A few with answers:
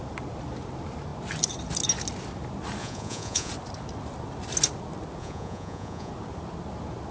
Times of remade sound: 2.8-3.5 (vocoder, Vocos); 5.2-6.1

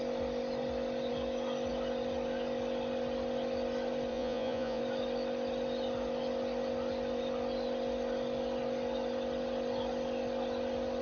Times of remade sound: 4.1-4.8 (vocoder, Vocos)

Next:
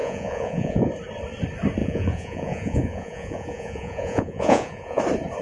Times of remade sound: 0.0-0.9 (vocoder, Vocos); 1.8-5.0

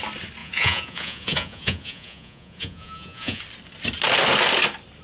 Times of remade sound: 0.4-3.4 (vocoder, Vocos)

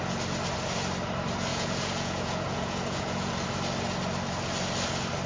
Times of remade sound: 1.5-3.3 (vocoder, Vocos)

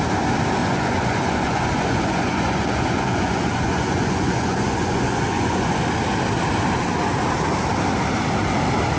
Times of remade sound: 0.6-5.8 (vocoder, Vocos)